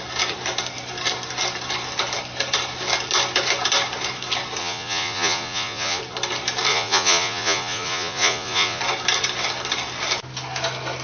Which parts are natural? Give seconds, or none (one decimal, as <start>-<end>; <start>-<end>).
0.0-4.6; 6.0-6.7; 8.8-11.0